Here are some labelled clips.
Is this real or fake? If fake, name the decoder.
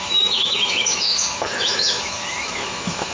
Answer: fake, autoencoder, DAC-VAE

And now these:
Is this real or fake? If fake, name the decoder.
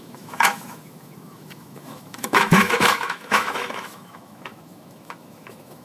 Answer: fake, autoencoder, DAC-VAE